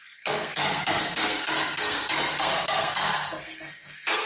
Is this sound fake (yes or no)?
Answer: yes